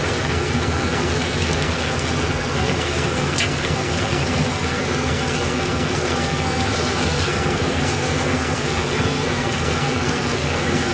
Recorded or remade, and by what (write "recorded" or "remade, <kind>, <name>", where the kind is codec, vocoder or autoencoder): remade, codec, SNAC